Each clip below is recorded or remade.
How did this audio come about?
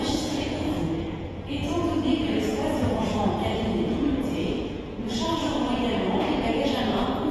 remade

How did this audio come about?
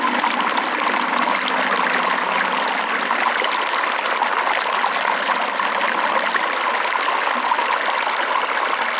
recorded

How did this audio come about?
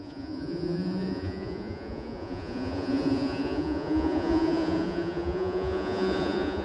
remade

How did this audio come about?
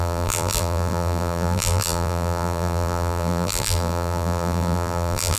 remade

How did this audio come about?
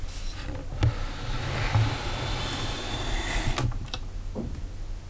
recorded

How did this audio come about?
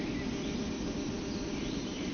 recorded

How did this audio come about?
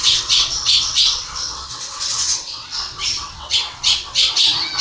remade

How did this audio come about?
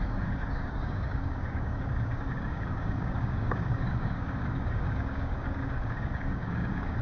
remade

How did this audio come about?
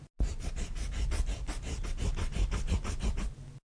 recorded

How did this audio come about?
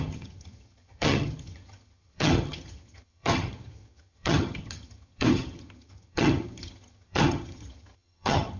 remade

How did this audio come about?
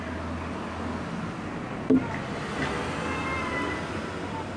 recorded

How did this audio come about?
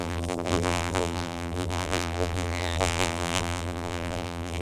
remade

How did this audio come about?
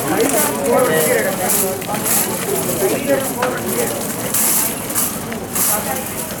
recorded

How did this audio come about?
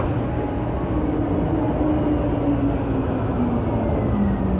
recorded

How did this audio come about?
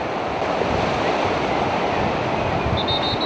recorded